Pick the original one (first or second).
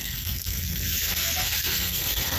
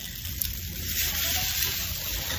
second